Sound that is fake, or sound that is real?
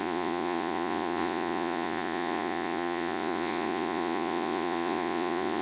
fake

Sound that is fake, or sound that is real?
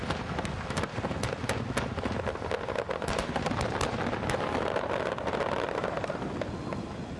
real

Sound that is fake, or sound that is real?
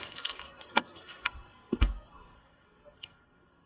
fake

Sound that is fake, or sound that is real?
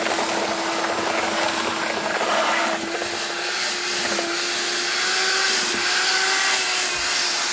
real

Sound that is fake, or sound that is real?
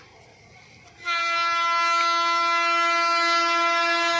real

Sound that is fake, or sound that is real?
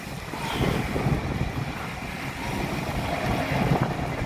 real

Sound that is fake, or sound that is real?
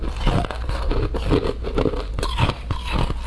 real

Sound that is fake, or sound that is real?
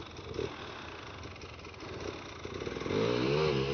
real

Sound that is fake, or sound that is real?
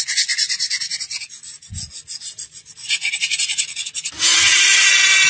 real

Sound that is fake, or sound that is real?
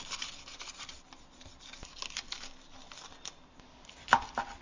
real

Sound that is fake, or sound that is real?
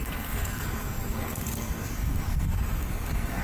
fake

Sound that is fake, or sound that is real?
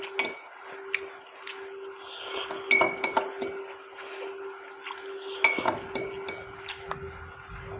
real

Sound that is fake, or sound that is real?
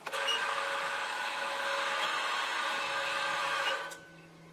fake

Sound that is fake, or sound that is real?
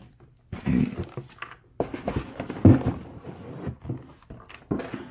real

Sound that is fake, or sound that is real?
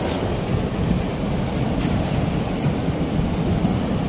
real